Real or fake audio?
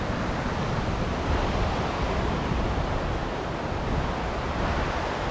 real